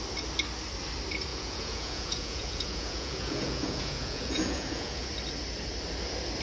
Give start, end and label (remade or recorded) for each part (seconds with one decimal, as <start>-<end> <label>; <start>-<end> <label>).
0.0-1.3 recorded; 1.3-5.1 remade; 5.1-6.4 recorded